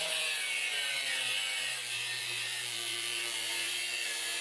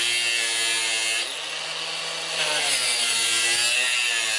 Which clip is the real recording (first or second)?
second